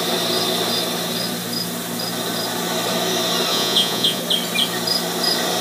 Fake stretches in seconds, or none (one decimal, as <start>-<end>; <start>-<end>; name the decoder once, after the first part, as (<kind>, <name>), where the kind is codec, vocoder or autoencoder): 3.5-4.2 (vocoder, Vocos)